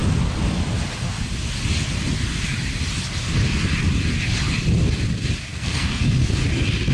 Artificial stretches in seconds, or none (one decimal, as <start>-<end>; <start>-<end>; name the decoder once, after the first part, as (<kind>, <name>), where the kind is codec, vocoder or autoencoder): 5.5-6.3 (codec, SNAC)